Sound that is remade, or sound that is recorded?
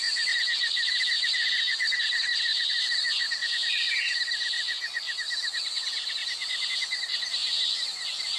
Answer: recorded